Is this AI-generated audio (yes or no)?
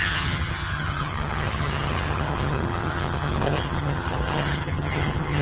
yes